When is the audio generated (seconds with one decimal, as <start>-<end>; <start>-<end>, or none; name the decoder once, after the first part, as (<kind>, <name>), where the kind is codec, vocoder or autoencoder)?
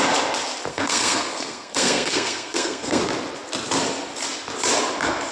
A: 0.7-3.0 (codec, SNAC)